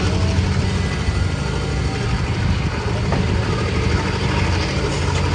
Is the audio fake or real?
real